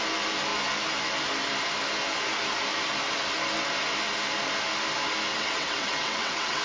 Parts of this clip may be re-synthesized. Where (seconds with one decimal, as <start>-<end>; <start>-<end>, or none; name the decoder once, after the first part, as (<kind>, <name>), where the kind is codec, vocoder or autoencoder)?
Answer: 5.3-6.6 (vocoder, WaveNeXt)